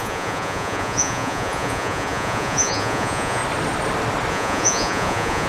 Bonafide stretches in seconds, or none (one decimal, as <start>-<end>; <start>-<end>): 3.4-4.3